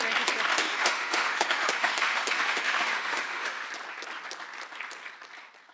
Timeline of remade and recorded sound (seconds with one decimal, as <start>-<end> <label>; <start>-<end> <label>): 0.0-0.5 recorded; 0.5-3.7 remade; 3.7-5.7 recorded